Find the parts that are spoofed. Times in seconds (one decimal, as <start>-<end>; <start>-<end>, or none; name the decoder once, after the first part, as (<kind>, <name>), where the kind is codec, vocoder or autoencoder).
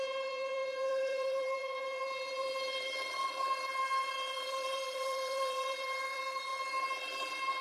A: 0.0-7.6 (vocoder, BigVGAN v2)